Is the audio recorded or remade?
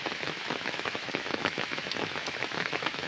remade